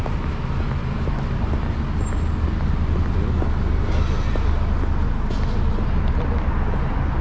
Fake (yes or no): no